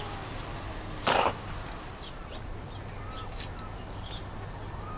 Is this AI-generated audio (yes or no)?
no